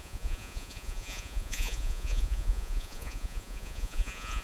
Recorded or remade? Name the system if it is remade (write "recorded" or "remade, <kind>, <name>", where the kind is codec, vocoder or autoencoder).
remade, vocoder, Vocos